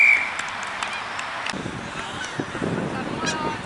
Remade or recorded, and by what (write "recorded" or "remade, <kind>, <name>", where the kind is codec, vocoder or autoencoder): recorded